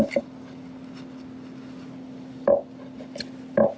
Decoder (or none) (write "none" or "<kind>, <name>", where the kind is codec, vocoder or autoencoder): none